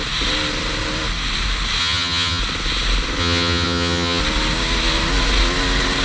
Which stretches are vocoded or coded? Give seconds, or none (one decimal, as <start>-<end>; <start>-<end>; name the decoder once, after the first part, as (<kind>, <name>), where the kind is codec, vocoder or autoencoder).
1.8-2.4 (vocoder, HiFi-GAN); 3.2-4.2